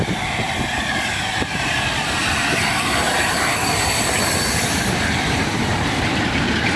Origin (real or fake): fake